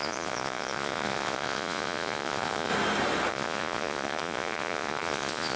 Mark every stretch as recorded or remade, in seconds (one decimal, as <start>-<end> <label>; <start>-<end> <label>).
0.0-2.7 remade; 2.7-3.3 recorded; 3.3-5.6 remade

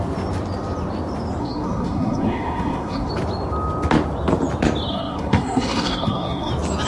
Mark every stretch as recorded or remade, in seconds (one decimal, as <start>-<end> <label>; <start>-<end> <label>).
0.0-1.4 recorded; 1.4-3.1 remade; 3.1-4.9 recorded; 4.9-6.5 remade; 6.5-6.9 recorded